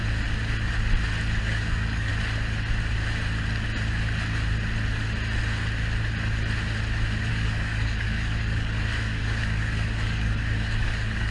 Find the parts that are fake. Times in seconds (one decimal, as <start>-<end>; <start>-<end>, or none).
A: 1.4-2.1; 7.3-11.3